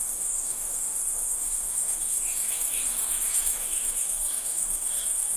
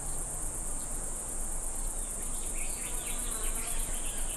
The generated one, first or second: first